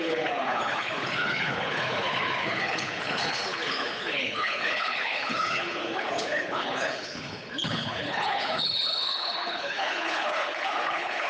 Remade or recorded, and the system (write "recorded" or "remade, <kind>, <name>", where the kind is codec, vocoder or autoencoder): remade, codec, HILCodec